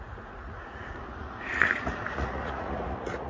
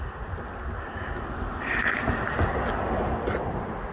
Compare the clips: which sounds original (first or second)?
second